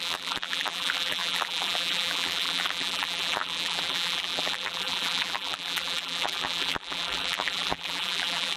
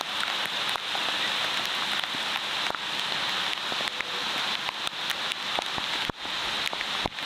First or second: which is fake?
first